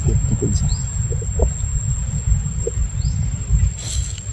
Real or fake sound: real